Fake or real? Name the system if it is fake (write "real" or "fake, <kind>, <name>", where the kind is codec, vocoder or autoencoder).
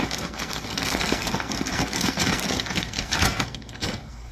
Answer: fake, codec, SNAC